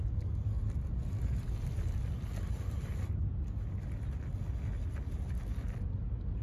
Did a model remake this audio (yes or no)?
no